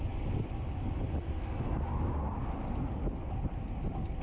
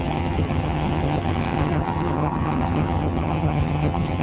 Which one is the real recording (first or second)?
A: first